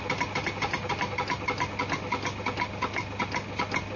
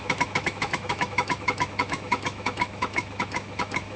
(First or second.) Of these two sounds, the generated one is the second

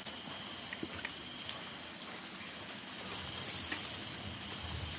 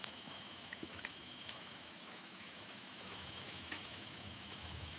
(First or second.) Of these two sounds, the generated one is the second